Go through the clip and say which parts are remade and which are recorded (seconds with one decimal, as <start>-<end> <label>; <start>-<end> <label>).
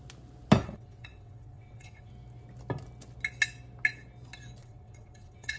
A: 0.0-0.6 recorded; 0.6-2.1 remade; 2.1-4.6 recorded; 4.6-5.6 remade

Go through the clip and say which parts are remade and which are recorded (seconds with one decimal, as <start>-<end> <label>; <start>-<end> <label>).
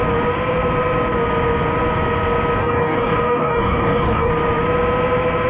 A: 0.0-2.6 recorded; 2.6-4.3 remade; 4.3-5.5 recorded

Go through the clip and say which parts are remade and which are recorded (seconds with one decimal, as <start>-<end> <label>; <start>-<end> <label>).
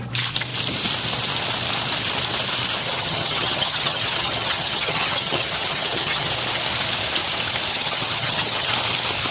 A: 0.0-2.8 recorded; 2.8-6.3 remade; 6.3-7.7 recorded; 7.7-8.7 remade; 8.7-9.3 recorded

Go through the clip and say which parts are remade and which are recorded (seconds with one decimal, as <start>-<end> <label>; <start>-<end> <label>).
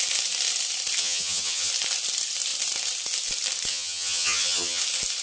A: 0.0-1.0 recorded; 1.0-1.7 remade; 1.7-3.7 recorded; 3.7-4.8 remade; 4.8-5.2 recorded